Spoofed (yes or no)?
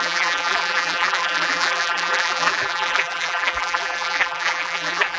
yes